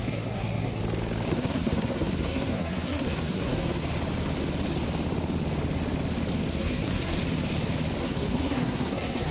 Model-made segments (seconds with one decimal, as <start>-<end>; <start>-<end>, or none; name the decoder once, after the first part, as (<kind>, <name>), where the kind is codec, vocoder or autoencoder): 0.0-0.8 (codec, SNAC); 1.3-3.8; 6.5-7.2; 8.0-9.3